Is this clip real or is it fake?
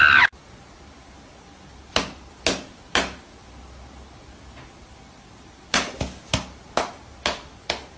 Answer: real